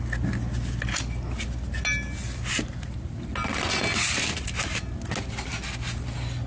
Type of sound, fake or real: real